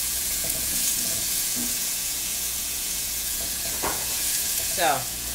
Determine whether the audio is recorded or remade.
remade